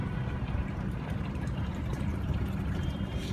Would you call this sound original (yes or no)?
no